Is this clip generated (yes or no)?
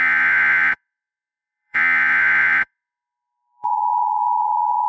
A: yes